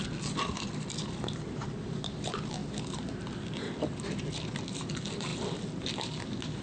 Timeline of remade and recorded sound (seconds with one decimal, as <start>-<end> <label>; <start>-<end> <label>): 0.0-6.6 recorded